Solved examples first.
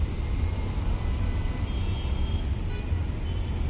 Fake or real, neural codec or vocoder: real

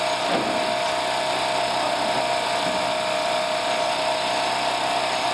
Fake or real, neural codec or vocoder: real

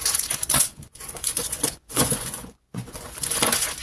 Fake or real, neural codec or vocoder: fake, vocoder, Vocos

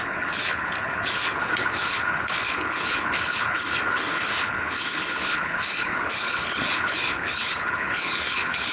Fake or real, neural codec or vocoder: fake, codec, HILCodec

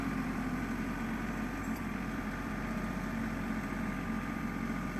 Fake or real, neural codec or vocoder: fake, vocoder, BigVGAN v2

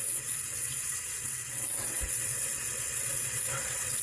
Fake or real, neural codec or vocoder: fake, vocoder, WaveNeXt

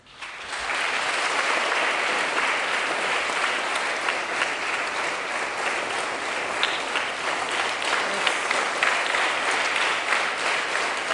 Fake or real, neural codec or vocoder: real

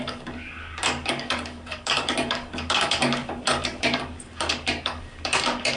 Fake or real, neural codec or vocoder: fake, codec, DAC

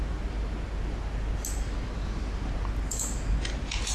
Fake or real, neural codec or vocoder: real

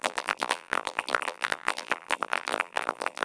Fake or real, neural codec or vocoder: fake, vocoder, BigVGAN v2